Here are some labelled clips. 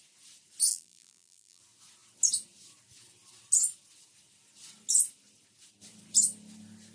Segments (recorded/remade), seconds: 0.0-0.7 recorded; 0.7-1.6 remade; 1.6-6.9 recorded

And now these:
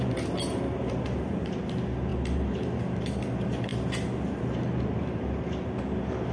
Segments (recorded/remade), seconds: 0.0-6.3 recorded

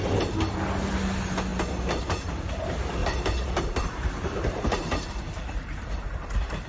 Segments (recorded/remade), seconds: 0.0-3.0 recorded; 3.0-6.7 remade

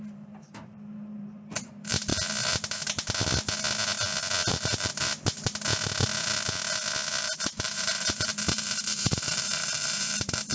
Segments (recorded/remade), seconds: 0.0-2.1 remade; 2.1-4.5 recorded; 4.5-5.1 remade; 5.1-7.2 recorded; 7.2-10.5 remade

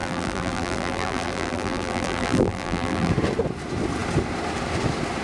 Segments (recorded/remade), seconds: 0.0-3.1 remade; 3.1-5.2 recorded

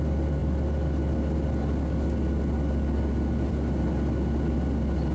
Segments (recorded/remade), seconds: 0.0-5.1 recorded

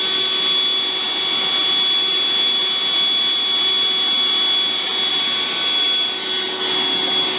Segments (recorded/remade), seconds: 0.0-7.4 recorded

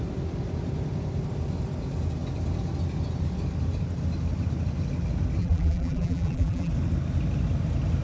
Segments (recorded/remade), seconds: 0.0-5.4 recorded; 5.4-6.7 remade; 6.7-8.0 recorded